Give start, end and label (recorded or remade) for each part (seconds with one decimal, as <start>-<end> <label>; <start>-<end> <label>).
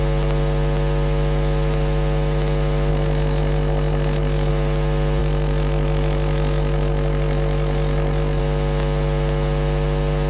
0.0-2.9 recorded; 2.9-4.5 remade; 4.5-5.2 recorded; 5.2-8.4 remade; 8.4-10.3 recorded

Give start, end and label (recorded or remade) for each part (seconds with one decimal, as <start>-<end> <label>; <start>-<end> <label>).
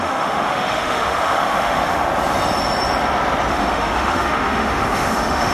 0.0-2.1 remade; 2.1-3.5 recorded; 3.5-5.5 remade